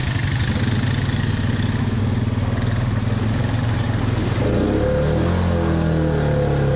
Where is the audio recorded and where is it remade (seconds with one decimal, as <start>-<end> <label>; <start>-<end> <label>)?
0.0-6.8 recorded